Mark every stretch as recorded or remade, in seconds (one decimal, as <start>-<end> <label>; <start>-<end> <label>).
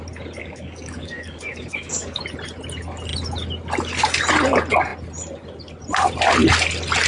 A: 0.0-0.4 recorded; 0.4-2.2 remade; 2.2-7.1 recorded